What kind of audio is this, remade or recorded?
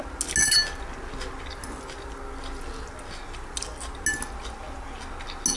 recorded